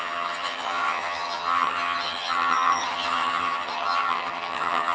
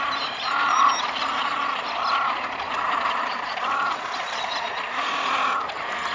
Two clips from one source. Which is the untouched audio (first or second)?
second